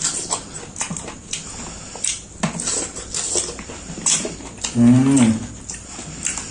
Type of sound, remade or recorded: recorded